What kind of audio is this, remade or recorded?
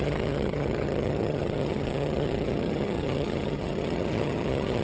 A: remade